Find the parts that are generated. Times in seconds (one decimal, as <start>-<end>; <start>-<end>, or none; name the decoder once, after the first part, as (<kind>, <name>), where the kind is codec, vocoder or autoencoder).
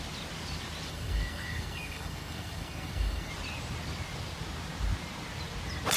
0.9-3.3 (codec, SNAC)